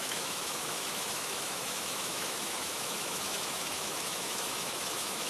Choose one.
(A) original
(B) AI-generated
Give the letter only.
B